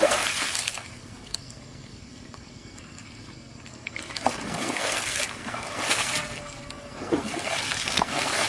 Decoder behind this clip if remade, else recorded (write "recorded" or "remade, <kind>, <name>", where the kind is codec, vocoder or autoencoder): remade, codec, SNAC